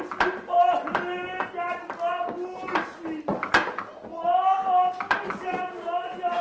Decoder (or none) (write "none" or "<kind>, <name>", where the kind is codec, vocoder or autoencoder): none